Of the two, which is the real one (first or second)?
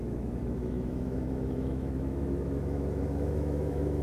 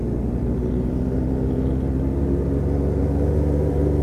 second